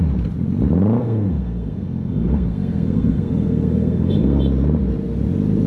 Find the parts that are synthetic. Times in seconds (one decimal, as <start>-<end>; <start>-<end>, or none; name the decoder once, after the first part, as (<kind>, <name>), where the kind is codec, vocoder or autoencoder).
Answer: 1.0-4.4 (codec, SNAC)